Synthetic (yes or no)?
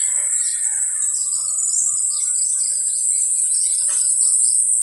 no